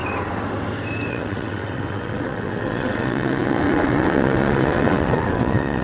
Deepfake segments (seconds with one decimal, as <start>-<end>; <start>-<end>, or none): 1.1-5.8